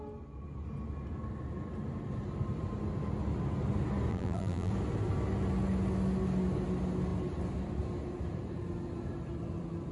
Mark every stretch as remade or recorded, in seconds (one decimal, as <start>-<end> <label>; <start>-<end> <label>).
0.0-4.1 recorded; 4.1-4.7 remade; 4.7-9.9 recorded